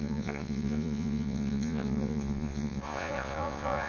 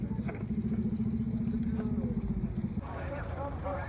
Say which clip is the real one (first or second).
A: second